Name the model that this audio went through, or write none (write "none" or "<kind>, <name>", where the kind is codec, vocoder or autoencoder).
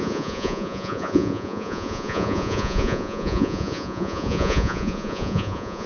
vocoder, Vocos